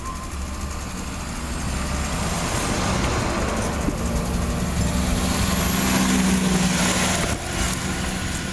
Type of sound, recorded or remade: recorded